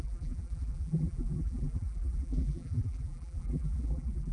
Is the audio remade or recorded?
remade